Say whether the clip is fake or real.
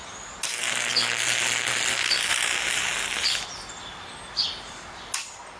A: real